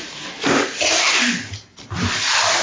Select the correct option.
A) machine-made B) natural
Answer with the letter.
B